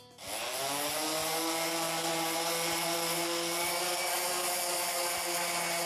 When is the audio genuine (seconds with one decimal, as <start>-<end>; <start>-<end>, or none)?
0.0-5.9